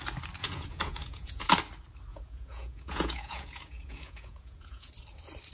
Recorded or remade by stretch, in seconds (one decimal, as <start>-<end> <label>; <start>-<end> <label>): 0.0-0.4 recorded; 0.4-1.5 remade; 1.5-2.1 recorded; 2.1-4.9 remade; 4.9-5.5 recorded